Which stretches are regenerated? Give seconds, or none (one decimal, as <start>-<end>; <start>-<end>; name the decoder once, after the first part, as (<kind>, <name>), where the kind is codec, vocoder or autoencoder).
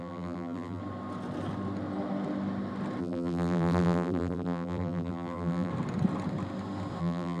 0.0-0.8 (vocoder, BigVGAN v2); 3.0-5.7; 7.0-7.4